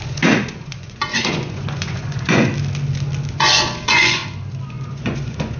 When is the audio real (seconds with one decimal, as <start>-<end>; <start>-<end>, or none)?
2.5-3.3; 4.2-4.7